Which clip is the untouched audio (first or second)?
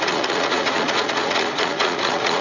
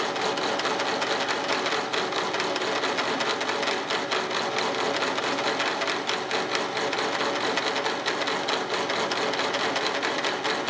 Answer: second